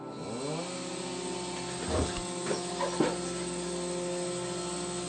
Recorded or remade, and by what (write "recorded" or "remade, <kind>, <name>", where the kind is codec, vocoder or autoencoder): recorded